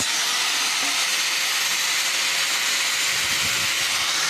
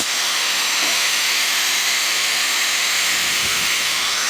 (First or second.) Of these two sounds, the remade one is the second